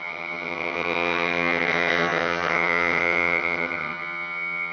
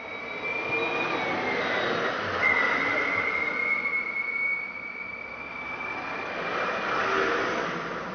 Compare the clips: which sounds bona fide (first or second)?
second